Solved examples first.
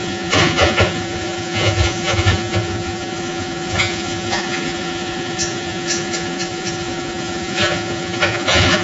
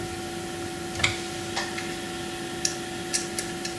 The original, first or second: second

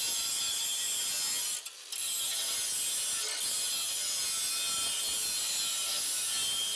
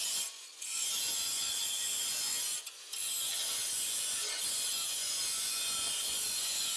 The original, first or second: first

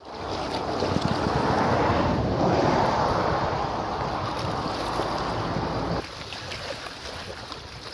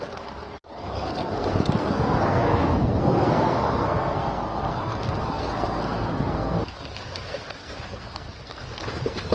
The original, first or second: first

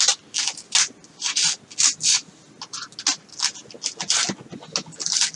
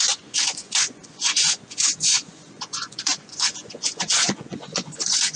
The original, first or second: first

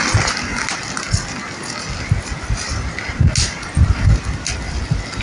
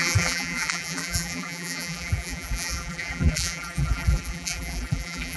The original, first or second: first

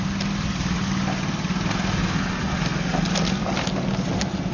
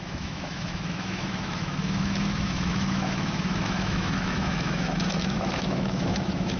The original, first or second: first